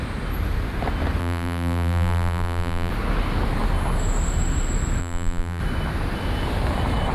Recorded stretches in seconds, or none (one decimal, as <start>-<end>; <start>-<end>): 0.0-1.2; 2.9-5.0; 5.6-7.1